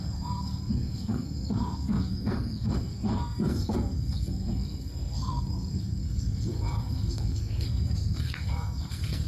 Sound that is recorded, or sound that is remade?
remade